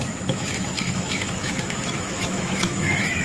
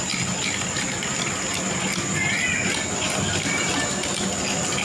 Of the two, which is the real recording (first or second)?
second